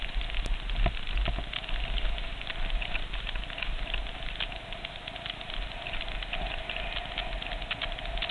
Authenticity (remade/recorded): recorded